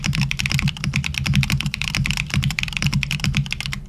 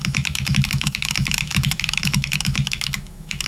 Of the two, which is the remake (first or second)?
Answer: second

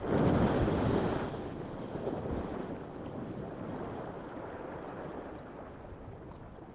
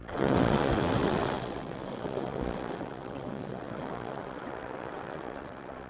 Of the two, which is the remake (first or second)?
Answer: second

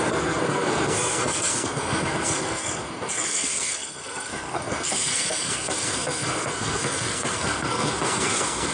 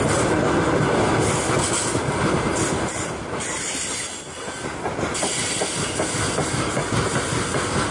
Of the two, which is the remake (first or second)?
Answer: first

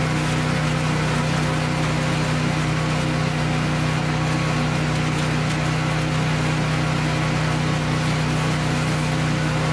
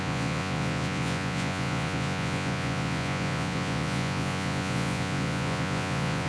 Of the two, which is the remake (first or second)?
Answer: second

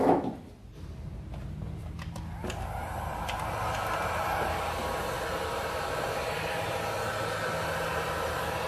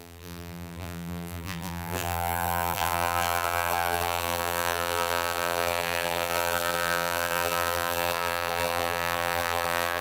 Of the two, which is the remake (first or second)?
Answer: second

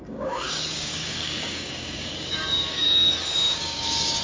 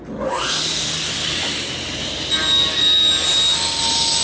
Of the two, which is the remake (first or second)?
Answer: first